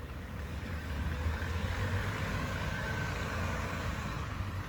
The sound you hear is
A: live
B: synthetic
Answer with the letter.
B